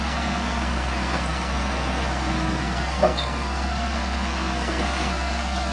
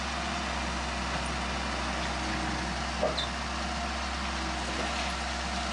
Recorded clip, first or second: second